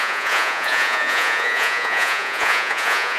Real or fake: fake